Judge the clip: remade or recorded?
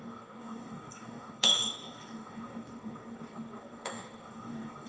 remade